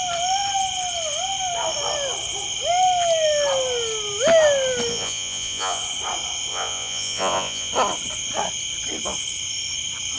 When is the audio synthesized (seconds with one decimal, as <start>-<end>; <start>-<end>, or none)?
4.9-5.8; 6.5-7.7